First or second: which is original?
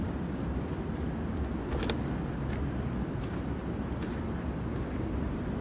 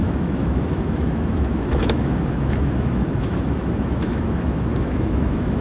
first